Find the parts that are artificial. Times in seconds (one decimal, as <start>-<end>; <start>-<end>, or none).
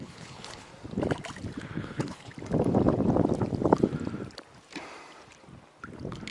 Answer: 0.0-0.7; 1.6-2.3